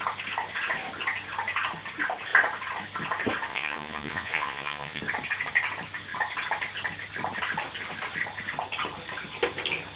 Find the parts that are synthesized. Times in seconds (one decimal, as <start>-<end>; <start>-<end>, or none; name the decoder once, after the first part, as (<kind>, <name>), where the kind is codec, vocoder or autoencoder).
3.5-5.0 (vocoder, Vocos)